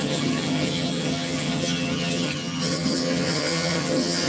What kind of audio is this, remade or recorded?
remade